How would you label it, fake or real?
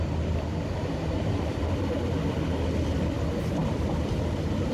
real